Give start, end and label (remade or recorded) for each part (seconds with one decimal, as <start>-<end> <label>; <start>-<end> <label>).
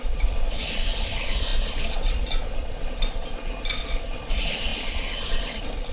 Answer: 0.0-5.9 recorded